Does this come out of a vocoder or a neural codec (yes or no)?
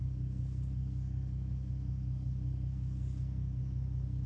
yes